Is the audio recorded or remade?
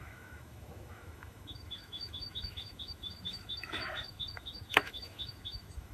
remade